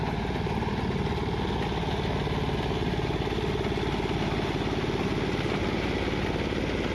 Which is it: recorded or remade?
recorded